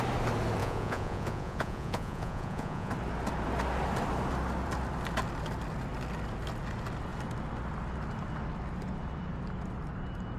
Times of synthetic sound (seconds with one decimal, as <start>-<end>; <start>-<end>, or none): 0.6-2.9